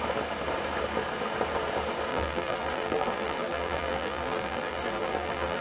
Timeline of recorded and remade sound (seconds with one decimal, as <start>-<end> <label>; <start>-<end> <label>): 0.0-2.1 recorded; 2.1-5.6 remade